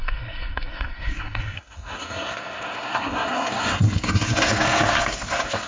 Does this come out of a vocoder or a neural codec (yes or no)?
yes